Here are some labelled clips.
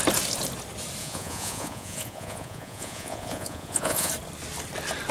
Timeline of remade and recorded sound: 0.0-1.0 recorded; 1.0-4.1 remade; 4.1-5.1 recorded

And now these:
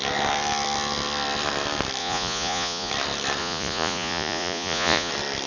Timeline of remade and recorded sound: 0.0-2.0 recorded; 2.0-2.9 remade; 2.9-3.4 recorded; 3.4-5.1 remade; 5.1-5.5 recorded